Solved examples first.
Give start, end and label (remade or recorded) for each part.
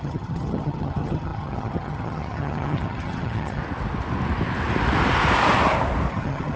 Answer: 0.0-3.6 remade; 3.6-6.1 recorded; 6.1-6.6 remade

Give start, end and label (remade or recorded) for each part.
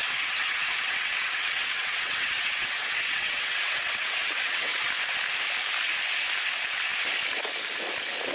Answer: 0.0-4.9 remade; 4.9-8.3 recorded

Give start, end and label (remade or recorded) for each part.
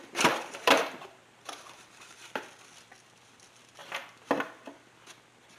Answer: 0.0-2.4 remade; 2.4-5.6 recorded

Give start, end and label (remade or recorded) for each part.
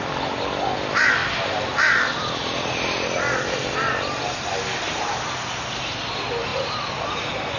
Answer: 0.0-7.6 recorded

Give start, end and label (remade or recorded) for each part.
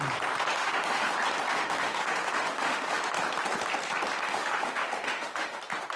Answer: 0.0-0.5 recorded; 0.5-1.1 remade; 1.1-1.5 recorded; 1.5-3.1 remade; 3.1-4.3 recorded; 4.3-5.6 remade; 5.6-6.0 recorded